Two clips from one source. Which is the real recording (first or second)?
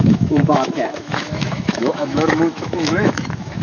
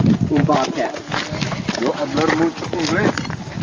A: second